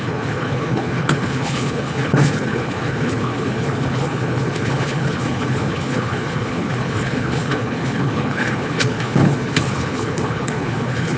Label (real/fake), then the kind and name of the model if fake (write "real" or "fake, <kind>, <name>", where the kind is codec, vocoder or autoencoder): fake, codec, HILCodec